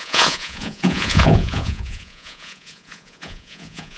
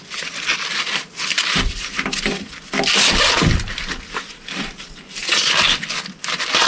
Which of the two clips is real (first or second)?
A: second